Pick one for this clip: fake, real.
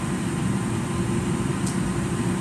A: real